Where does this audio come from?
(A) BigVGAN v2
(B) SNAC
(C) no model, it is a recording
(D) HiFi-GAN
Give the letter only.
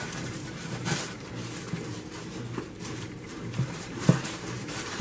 A